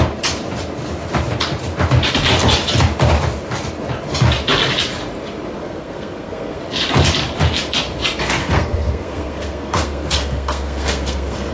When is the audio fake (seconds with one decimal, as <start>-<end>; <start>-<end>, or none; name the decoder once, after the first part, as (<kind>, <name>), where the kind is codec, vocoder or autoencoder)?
5.6-6.6 (codec, SNAC); 8.4-11.5